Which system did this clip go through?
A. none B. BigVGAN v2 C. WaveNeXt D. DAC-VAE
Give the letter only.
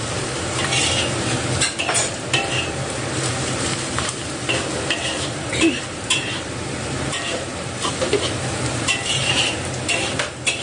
B